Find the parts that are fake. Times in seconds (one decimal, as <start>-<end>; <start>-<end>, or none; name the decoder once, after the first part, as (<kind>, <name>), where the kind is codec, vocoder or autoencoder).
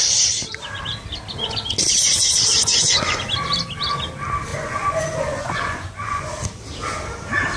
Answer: 2.7-3.2 (vocoder, Vocos); 4.5-6.3